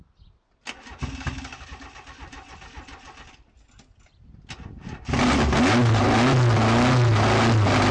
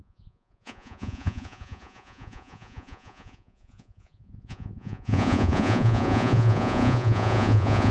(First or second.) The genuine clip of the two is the first